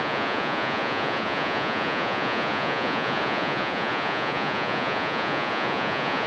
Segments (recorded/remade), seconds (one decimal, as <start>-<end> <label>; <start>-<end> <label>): 0.0-6.3 remade